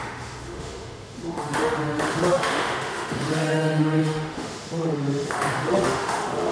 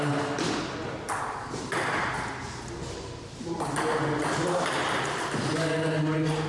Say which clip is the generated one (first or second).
first